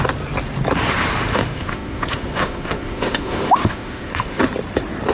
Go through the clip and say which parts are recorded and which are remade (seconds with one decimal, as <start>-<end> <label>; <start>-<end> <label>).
0.0-1.3 recorded; 1.3-4.4 remade; 4.4-5.1 recorded